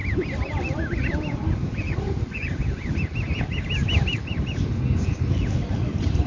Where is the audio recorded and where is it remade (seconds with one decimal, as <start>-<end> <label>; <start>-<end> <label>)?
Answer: 0.0-3.8 recorded; 3.8-4.7 remade; 4.7-6.3 recorded